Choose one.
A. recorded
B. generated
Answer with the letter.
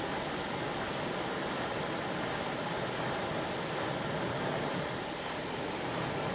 A